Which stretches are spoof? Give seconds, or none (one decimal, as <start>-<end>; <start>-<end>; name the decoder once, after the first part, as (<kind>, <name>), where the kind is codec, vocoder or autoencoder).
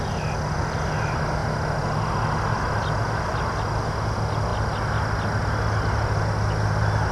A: none